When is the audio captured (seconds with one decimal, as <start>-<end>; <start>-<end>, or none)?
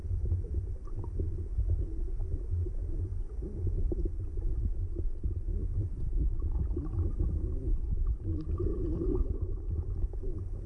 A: 1.0-5.6; 6.8-8.7